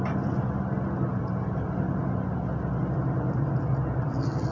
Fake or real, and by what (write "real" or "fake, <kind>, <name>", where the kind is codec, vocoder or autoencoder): real